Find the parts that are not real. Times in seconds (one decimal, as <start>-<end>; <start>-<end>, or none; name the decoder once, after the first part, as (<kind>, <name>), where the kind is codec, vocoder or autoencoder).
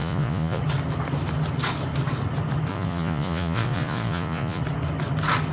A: 0.0-0.6 (vocoder, Vocos); 2.7-4.6